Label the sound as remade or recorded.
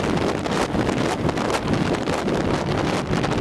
recorded